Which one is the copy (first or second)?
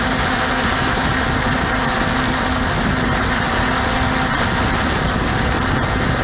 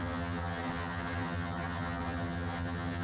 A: second